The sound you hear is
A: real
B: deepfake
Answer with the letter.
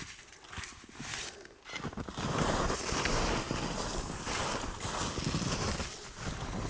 A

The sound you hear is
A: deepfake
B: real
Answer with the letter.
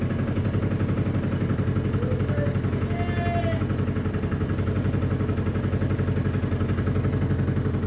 B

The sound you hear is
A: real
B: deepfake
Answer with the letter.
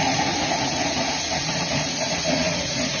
B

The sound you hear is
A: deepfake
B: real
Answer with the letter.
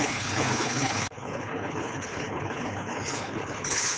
A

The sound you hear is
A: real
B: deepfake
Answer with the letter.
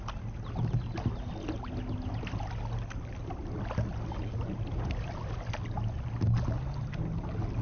A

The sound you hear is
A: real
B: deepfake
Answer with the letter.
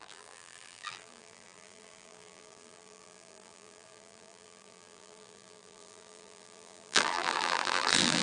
B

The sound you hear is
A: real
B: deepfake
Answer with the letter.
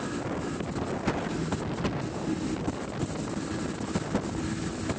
A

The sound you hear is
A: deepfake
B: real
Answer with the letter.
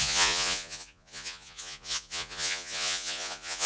A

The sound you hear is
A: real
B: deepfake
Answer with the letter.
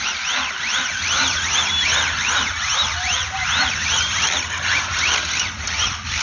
A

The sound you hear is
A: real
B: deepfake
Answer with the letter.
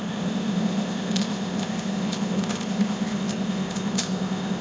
B